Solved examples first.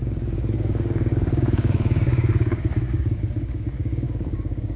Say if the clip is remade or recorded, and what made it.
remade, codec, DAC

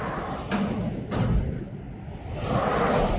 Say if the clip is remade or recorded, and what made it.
recorded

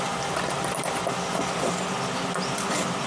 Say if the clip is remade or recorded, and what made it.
recorded